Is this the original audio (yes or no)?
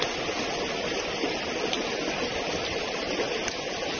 yes